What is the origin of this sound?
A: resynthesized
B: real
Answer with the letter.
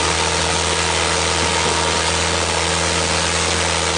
B